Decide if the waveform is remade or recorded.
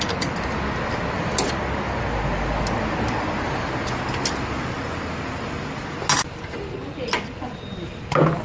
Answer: recorded